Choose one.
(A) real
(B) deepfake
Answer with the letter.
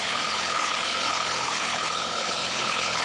B